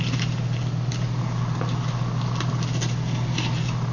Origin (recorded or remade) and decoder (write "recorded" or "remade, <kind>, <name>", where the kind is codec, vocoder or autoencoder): recorded